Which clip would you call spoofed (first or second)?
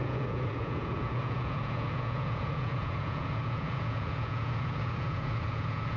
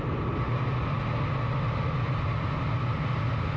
first